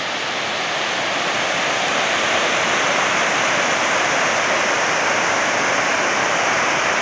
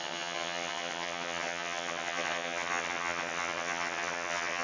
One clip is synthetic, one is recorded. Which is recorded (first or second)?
first